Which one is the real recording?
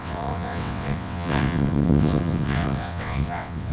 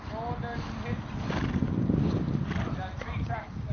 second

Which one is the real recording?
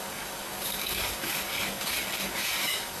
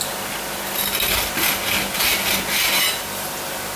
second